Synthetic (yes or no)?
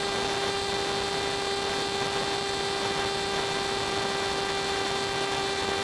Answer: no